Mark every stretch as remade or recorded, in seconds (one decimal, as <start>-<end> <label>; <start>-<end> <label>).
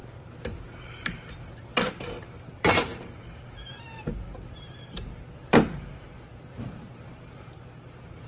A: 0.0-8.3 remade